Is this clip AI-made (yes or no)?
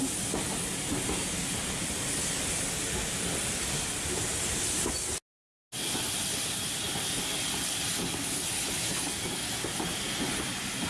no